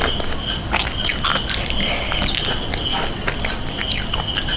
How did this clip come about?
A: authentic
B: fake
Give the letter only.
A